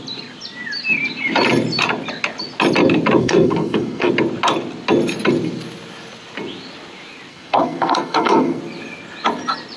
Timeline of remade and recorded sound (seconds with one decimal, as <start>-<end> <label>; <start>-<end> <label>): 0.0-3.2 recorded; 3.2-4.1 remade; 4.1-7.3 recorded; 7.3-8.6 remade; 8.6-9.8 recorded